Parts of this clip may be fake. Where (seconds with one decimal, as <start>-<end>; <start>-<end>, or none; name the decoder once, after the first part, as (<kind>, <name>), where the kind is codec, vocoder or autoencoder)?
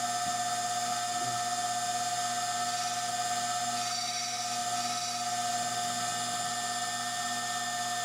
none